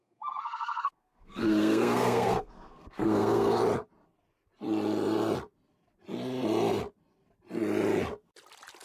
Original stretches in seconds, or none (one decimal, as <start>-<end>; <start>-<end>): 3.6-8.8